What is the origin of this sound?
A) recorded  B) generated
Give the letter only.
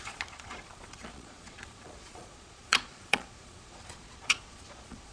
B